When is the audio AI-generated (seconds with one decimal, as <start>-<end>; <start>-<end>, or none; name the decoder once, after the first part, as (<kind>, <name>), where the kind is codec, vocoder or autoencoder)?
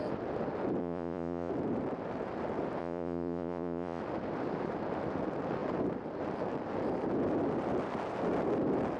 0.8-1.5 (vocoder, Vocos); 2.8-4.0